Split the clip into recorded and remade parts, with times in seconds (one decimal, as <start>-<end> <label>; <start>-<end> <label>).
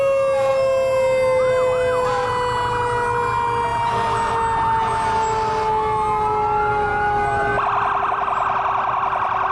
0.0-3.7 recorded; 3.7-4.3 remade; 4.3-9.5 recorded